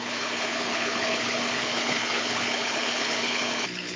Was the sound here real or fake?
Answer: fake